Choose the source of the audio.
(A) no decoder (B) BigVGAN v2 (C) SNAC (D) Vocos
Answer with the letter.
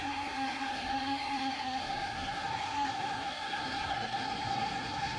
C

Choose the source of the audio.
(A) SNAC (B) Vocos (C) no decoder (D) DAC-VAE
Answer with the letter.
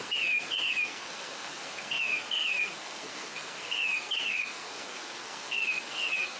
A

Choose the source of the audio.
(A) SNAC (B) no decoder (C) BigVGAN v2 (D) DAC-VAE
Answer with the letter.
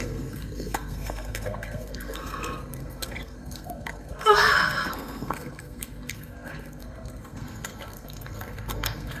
A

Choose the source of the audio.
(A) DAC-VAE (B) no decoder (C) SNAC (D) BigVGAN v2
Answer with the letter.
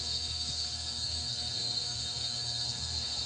C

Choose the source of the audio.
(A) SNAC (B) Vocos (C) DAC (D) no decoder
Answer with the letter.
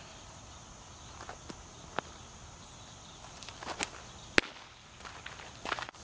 D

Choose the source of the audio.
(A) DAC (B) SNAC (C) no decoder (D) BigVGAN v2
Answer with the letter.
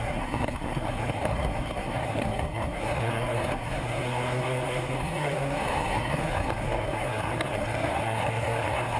B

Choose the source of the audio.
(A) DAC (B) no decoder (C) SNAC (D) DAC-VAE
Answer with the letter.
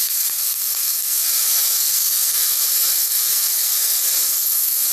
C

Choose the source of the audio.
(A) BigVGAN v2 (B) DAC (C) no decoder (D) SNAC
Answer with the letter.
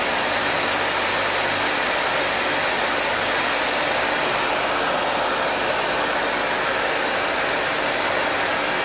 C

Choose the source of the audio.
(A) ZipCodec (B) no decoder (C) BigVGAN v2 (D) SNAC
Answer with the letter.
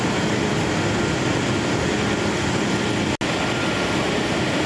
B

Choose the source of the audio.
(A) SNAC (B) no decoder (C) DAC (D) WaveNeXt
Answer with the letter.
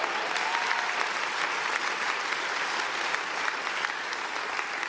B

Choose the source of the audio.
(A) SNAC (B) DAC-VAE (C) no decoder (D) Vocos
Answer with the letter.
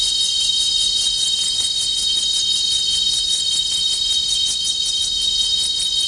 C